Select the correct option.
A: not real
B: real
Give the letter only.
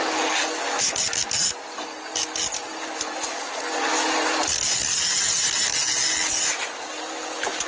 B